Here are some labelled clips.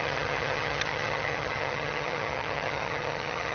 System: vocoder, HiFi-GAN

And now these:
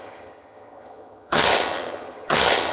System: vocoder, HiFi-GAN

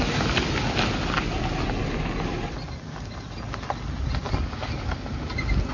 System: none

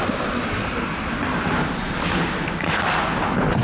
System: none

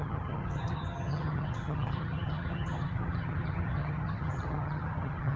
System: vocoder, HiFi-GAN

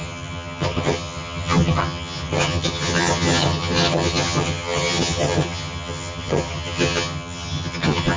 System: vocoder, HiFi-GAN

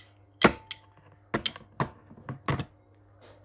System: none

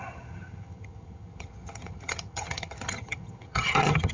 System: vocoder, HiFi-GAN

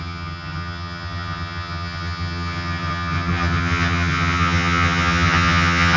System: vocoder, HiFi-GAN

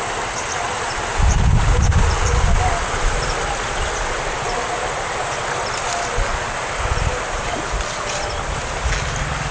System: none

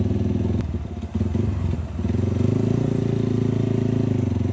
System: none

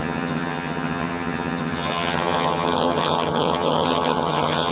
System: vocoder, HiFi-GAN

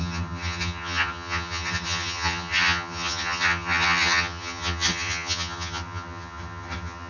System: vocoder, HiFi-GAN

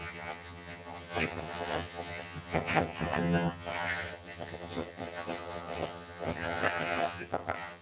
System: vocoder, HiFi-GAN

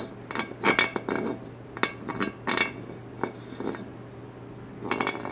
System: none